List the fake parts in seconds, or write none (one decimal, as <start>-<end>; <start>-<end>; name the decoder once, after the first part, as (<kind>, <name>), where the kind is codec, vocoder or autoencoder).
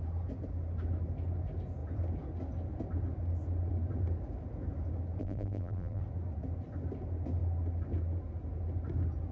5.2-6.0 (vocoder, BigVGAN v2)